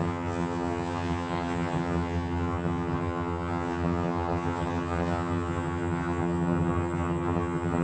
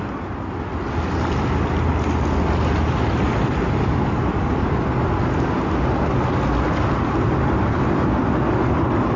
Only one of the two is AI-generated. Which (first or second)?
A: first